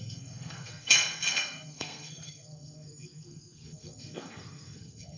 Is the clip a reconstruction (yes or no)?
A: yes